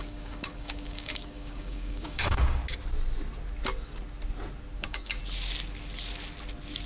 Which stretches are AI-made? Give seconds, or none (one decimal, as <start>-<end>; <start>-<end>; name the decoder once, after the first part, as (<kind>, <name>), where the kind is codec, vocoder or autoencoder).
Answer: 0.0-2.6 (codec, DAC); 4.8-5.2